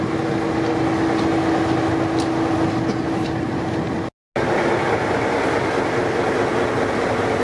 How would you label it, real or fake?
real